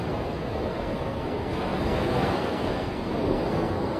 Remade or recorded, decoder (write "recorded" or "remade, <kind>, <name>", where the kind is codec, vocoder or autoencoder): remade, codec, SNAC